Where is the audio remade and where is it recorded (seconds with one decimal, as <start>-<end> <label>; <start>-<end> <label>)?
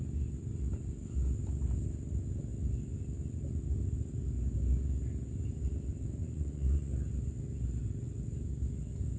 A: 0.0-6.2 recorded; 6.2-6.9 remade; 6.9-9.2 recorded